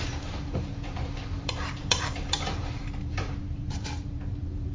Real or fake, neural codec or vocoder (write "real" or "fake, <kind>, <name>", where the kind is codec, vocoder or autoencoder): fake, vocoder, BigVGAN v2